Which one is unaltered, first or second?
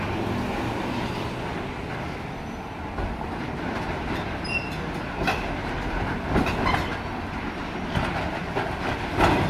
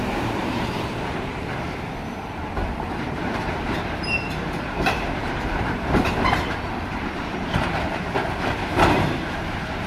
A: first